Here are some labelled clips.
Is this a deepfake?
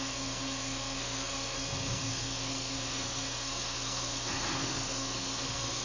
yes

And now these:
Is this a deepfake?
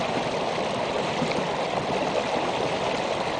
no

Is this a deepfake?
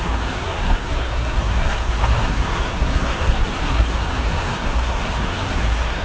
yes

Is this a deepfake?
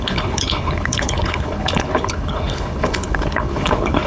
yes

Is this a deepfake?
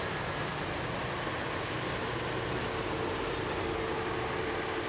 no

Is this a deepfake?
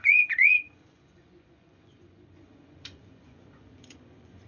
yes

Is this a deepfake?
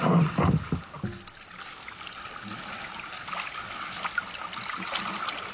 no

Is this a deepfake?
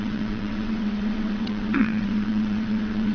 yes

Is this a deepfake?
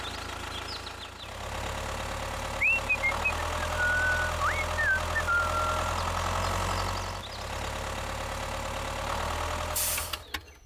no